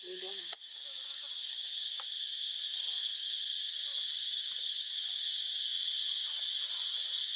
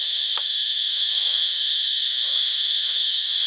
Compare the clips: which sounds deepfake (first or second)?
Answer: second